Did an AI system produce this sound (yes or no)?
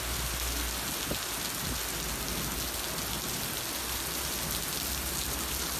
no